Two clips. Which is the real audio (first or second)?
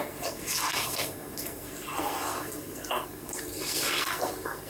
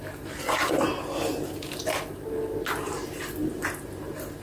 second